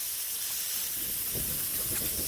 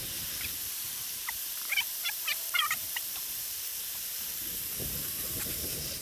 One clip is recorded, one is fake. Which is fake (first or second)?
second